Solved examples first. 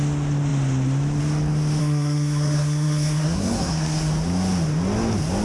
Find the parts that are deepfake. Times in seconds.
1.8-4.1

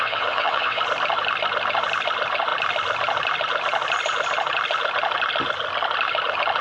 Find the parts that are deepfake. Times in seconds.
0.0-0.8